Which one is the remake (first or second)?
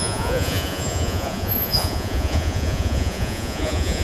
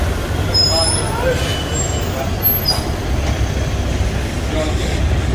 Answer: first